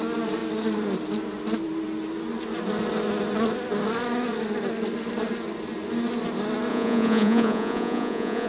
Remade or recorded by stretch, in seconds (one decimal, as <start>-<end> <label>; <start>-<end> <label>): 0.0-6.7 recorded; 6.7-8.5 remade